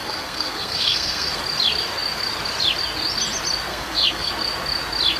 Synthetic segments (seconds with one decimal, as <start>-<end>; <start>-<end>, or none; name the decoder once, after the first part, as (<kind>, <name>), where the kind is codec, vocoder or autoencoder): 0.0-1.4 (codec, SNAC); 3.7-4.3